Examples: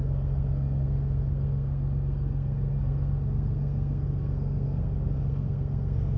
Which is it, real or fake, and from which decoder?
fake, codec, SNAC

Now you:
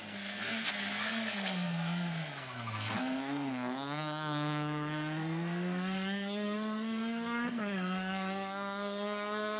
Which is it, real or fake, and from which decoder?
fake, codec, SNAC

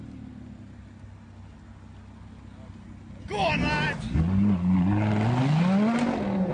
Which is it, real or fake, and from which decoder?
real